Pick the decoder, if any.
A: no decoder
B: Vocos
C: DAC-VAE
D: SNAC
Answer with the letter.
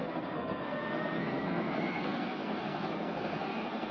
D